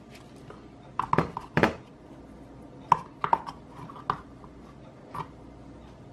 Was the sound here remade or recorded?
recorded